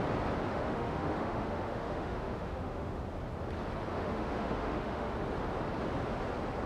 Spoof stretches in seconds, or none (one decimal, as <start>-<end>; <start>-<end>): 0.5-3.0; 3.9-5.1